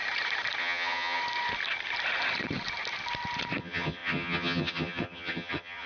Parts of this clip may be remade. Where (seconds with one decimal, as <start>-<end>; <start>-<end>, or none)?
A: 0.6-1.2; 3.6-5.9